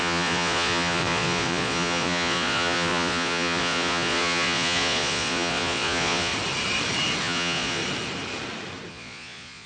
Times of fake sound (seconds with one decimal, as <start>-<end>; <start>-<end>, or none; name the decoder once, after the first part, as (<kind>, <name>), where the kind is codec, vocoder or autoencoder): 0.0-6.3 (vocoder, Vocos); 7.2-7.8; 8.9-9.7